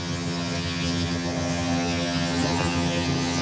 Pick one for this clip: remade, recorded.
remade